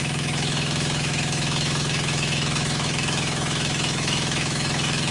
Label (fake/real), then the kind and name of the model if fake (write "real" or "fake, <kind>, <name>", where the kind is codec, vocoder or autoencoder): fake, autoencoder, DAC-VAE